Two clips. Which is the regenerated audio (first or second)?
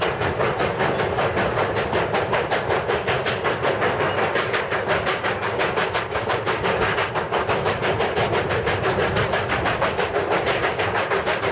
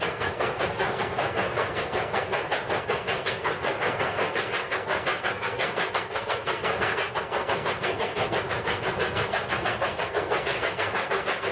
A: second